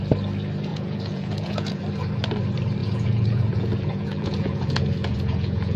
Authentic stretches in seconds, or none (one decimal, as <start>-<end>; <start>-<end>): 0.0-0.7; 1.8-2.8